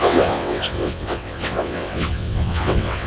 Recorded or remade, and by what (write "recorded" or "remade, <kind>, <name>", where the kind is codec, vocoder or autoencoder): remade, vocoder, WaveNeXt